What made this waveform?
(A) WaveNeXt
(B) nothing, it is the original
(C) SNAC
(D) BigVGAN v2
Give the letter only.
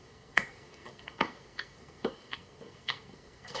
C